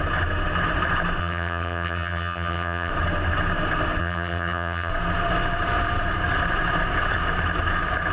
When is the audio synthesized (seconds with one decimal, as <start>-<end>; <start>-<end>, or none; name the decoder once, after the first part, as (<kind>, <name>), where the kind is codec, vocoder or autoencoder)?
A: 1.2-2.9 (vocoder, HiFi-GAN); 4.0-4.9